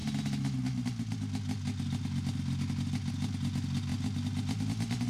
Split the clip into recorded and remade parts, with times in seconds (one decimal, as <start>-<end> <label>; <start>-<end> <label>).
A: 0.0-5.1 recorded